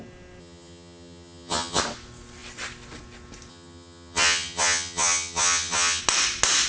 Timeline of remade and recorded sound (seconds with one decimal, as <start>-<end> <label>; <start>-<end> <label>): 0.0-0.4 recorded; 0.4-1.8 remade; 1.8-3.5 recorded; 3.5-6.0 remade; 6.0-6.7 recorded